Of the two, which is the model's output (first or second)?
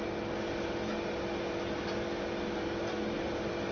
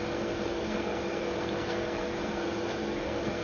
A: second